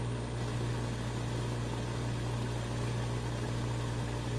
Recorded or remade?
recorded